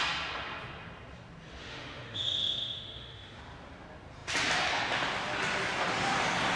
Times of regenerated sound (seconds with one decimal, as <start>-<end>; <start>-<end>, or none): 1.6-3.4